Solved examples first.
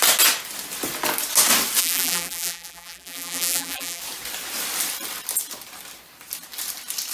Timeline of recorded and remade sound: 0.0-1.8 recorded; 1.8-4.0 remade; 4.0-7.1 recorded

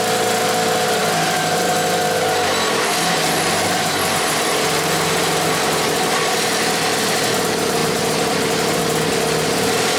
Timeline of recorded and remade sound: 0.0-7.8 recorded; 7.8-8.8 remade; 8.8-10.0 recorded